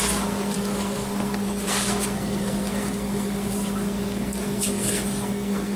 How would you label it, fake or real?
fake